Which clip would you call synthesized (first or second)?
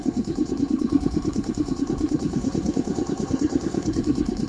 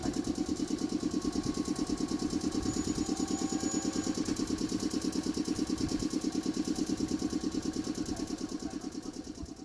first